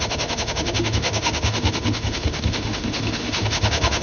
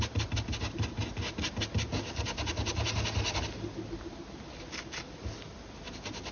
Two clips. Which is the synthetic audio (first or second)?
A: first